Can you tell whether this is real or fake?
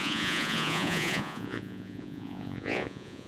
fake